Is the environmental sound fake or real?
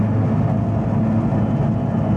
real